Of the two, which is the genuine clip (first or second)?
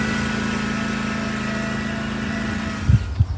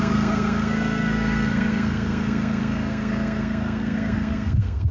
first